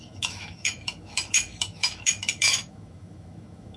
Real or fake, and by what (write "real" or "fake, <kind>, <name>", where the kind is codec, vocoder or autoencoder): fake, autoencoder, DAC-VAE